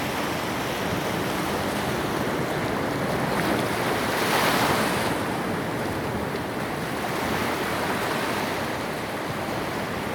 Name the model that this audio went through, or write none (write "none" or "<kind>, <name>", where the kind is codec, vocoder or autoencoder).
none